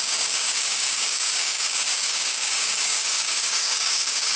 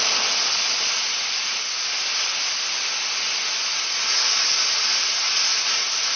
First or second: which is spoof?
first